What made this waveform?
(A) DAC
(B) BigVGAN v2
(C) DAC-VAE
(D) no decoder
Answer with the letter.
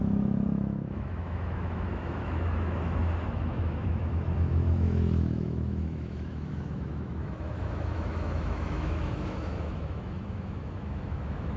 C